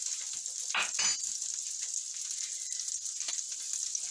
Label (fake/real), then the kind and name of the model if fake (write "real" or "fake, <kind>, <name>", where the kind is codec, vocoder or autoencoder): real